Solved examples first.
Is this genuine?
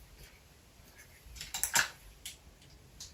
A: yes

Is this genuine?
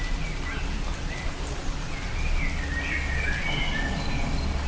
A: yes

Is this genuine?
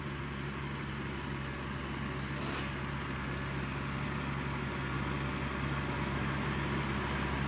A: yes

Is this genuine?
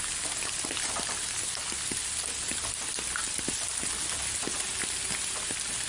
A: yes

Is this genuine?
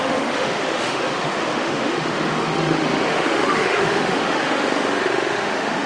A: no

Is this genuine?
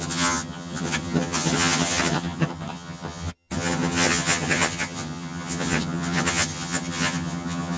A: no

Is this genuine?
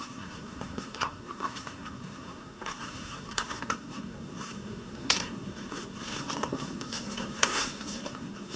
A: no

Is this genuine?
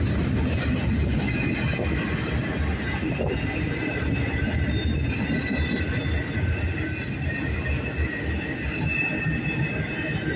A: yes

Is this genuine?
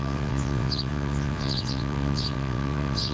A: no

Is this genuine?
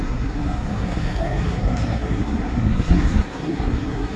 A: no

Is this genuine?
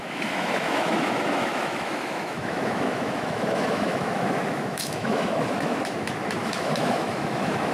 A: no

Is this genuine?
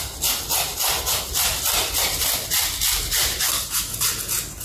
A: yes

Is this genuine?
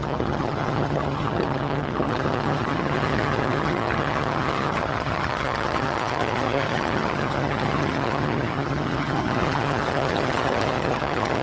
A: no